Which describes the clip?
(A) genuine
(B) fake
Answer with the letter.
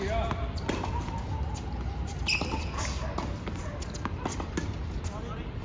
A